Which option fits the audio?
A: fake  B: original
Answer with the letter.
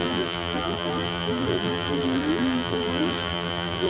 A